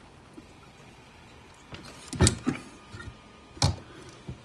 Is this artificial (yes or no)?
no